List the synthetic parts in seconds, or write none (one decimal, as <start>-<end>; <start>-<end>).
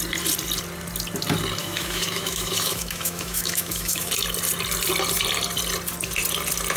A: 1.6-4.1